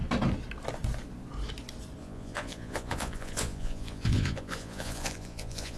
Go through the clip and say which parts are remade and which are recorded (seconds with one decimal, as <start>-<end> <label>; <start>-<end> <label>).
0.0-2.0 recorded; 2.0-5.8 remade